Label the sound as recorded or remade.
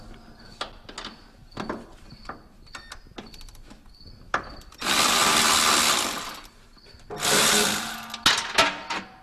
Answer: recorded